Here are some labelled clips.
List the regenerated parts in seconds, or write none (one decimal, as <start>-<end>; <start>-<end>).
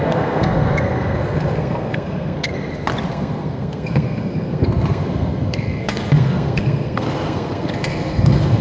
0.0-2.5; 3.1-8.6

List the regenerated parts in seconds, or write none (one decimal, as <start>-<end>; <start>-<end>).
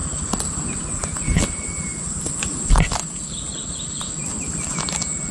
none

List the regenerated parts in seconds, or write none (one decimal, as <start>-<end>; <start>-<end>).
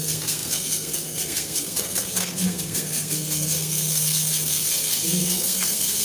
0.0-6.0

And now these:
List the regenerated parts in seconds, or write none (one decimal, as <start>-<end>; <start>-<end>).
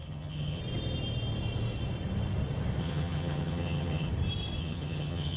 0.0-0.6; 2.8-4.1; 4.6-5.4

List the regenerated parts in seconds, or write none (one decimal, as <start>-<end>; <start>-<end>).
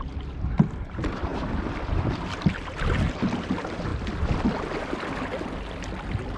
none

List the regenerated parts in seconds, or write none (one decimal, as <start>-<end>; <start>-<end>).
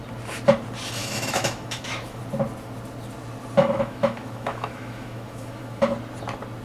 1.0-2.2; 3.6-5.8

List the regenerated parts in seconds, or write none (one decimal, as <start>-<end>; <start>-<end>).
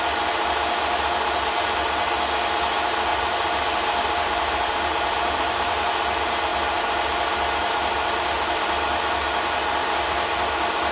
3.1-5.8